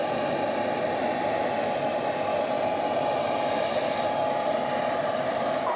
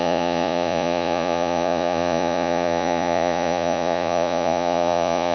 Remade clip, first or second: second